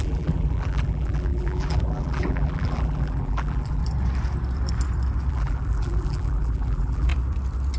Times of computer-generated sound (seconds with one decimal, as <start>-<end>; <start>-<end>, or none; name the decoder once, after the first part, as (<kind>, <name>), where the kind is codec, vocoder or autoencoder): 0.0-3.8 (vocoder, BigVGAN v2); 5.3-7.1